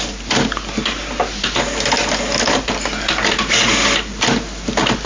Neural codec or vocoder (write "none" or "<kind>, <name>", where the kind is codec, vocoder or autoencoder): none